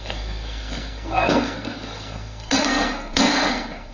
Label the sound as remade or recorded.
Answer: remade